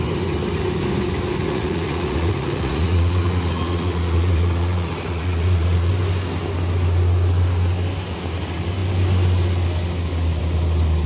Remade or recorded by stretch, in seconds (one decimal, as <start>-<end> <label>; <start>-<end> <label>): 0.0-1.4 recorded; 1.4-5.9 remade; 5.9-11.1 recorded